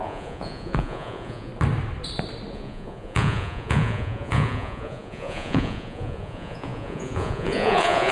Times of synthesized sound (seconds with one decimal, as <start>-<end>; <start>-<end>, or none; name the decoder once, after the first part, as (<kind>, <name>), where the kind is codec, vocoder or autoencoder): 0.0-1.5 (vocoder, Vocos); 2.5-8.1